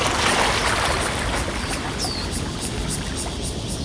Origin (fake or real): real